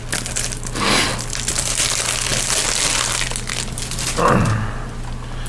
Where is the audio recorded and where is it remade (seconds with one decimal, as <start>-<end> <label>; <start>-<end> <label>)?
0.0-1.1 recorded; 1.1-1.8 remade; 1.8-5.5 recorded